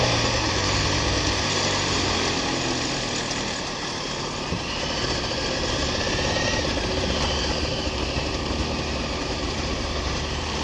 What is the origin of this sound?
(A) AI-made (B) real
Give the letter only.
A